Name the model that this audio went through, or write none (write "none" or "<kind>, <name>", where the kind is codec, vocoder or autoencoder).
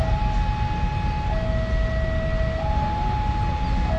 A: none